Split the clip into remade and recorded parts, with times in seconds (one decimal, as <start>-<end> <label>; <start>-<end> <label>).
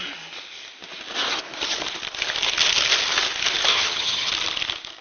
0.0-3.7 recorded; 3.7-4.3 remade; 4.3-5.0 recorded